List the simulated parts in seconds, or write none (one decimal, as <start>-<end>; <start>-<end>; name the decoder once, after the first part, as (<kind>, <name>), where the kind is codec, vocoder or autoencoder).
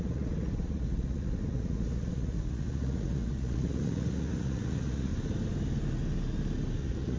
0.0-5.1 (vocoder, Vocos); 6.8-7.2